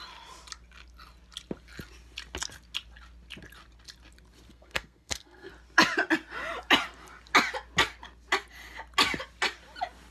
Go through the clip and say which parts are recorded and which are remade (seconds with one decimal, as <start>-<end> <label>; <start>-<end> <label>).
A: 0.0-4.5 recorded; 4.5-5.5 remade; 5.5-10.1 recorded